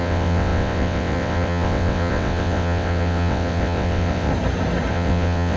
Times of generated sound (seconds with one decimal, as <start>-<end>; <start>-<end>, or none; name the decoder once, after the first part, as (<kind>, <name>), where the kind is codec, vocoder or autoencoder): 0.0-4.3 (vocoder, WaveNeXt); 4.9-5.6

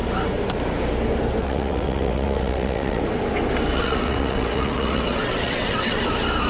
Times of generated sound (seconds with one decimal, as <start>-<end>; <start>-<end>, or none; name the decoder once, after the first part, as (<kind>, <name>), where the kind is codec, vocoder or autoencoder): 1.4-3.0 (vocoder, WaveNeXt); 3.7-6.0

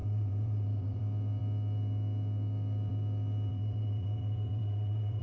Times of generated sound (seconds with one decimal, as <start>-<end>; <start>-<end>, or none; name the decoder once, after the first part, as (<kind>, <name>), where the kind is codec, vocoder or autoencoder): 0.0-1.0 (vocoder, WaveNeXt); 3.5-5.2

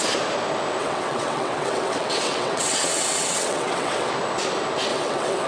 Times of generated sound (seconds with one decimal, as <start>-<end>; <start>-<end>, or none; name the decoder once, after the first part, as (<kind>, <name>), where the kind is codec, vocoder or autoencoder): 0.8-4.1 (vocoder, WaveNeXt); 4.9-5.5

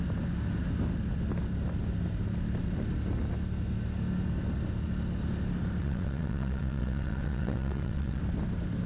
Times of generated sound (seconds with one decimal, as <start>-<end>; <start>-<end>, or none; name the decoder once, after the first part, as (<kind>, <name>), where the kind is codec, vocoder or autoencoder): 5.8-8.2 (vocoder, WaveNeXt)

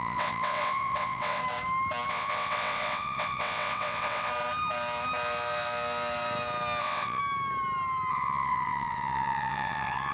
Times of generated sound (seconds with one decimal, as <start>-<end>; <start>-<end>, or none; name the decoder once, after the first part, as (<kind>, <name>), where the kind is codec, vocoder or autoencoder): 0.0-1.4 (vocoder, WaveNeXt); 2.1-4.3; 6.8-7.2; 8.1-10.1

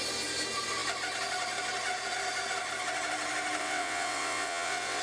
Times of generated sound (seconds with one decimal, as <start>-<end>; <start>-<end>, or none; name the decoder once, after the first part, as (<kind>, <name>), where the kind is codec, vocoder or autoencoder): 3.6-5.0 (vocoder, WaveNeXt)